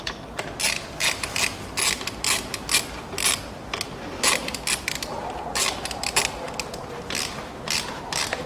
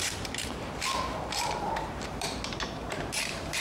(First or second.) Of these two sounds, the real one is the first